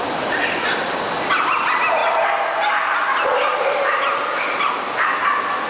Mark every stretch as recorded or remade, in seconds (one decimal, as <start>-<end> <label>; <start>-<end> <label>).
0.0-5.7 recorded